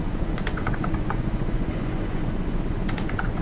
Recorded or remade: remade